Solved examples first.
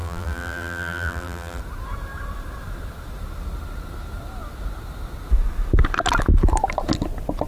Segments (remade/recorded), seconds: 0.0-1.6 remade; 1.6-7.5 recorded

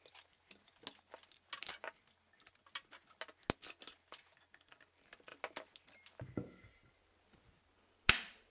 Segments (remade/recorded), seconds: 0.0-8.5 recorded

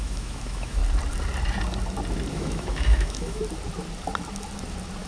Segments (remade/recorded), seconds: 0.0-0.8 remade; 0.8-2.3 recorded; 2.3-3.4 remade; 3.4-5.1 recorded